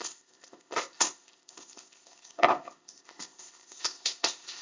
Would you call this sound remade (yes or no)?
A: yes